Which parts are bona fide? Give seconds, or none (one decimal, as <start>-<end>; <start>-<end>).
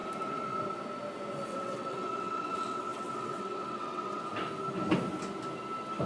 0.0-1.5; 4.2-6.1